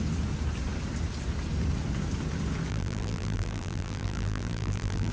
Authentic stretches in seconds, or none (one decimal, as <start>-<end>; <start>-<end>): 0.0-2.7